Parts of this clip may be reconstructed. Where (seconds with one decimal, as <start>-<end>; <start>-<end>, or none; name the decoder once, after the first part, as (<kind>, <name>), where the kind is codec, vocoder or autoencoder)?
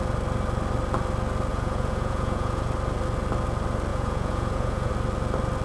1.5-2.6 (vocoder, Vocos); 3.9-4.9